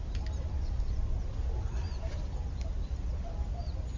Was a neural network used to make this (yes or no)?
no